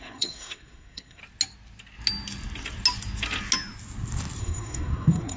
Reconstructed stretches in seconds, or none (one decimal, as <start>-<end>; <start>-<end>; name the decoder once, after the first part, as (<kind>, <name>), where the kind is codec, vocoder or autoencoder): 0.0-1.2 (codec, SNAC); 4.4-5.4